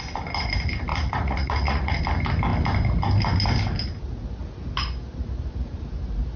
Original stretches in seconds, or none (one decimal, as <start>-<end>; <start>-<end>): 0.0-0.9; 2.0-6.4